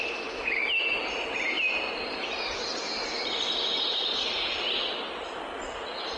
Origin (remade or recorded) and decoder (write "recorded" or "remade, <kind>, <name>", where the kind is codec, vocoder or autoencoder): recorded